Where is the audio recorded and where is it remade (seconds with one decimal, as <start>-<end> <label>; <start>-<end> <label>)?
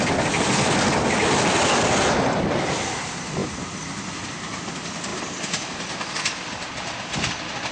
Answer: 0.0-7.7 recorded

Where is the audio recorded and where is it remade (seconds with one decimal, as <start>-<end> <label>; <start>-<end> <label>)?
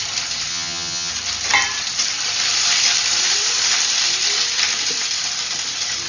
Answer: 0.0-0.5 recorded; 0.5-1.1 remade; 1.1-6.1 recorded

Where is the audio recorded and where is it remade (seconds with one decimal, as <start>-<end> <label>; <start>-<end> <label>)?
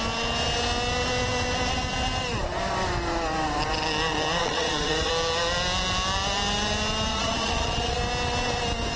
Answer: 0.0-4.4 recorded; 4.4-5.1 remade; 5.1-7.1 recorded; 7.1-8.0 remade; 8.0-9.0 recorded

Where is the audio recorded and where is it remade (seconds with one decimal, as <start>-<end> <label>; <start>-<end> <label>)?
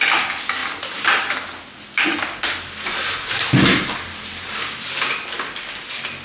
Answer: 0.0-6.2 recorded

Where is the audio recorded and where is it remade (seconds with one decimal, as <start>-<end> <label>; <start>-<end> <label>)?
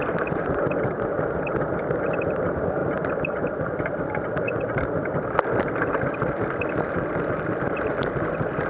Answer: 0.0-8.7 remade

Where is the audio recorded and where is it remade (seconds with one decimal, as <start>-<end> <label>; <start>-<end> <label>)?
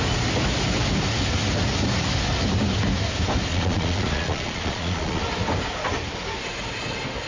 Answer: 0.0-3.5 recorded; 3.5-5.2 remade; 5.2-7.3 recorded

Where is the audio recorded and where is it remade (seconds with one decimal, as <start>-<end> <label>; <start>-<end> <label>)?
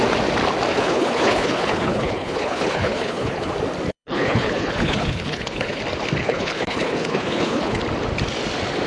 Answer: 0.0-0.7 recorded; 0.7-3.5 remade; 3.5-3.9 recorded; 3.9-5.8 remade; 5.8-6.2 recorded; 6.2-7.8 remade; 7.8-8.9 recorded